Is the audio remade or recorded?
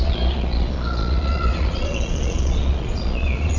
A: remade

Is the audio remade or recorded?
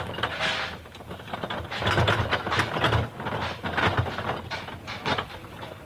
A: recorded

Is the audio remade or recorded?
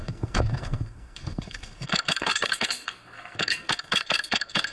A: remade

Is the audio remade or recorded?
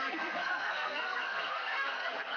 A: remade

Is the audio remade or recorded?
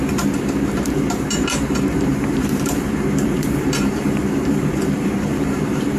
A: remade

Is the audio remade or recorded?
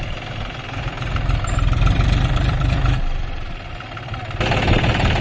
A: remade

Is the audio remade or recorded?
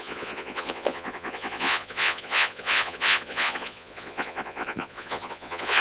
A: remade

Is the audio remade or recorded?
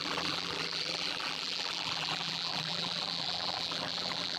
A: remade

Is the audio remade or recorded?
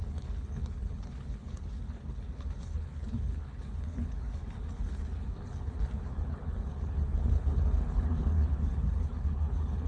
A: remade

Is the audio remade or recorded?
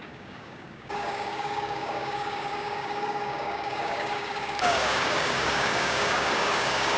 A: remade